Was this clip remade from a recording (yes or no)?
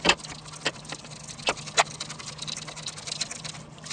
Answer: no